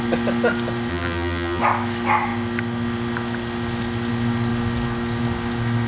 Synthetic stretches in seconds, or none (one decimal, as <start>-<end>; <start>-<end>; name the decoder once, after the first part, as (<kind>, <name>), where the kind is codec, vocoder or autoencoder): 0.9-1.6 (vocoder, BigVGAN v2)